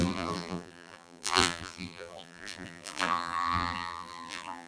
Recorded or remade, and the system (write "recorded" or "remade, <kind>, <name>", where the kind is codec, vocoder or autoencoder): remade, vocoder, BigVGAN v2